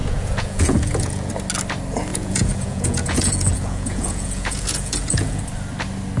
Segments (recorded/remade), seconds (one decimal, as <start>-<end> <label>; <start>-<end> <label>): 0.0-1.3 remade; 1.3-2.1 recorded; 2.1-5.4 remade; 5.4-6.2 recorded